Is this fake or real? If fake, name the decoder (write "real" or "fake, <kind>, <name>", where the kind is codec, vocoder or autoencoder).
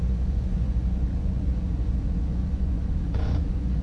fake, vocoder, Vocos